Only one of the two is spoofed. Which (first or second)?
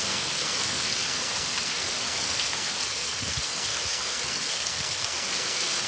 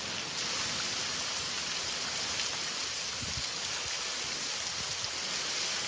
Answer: first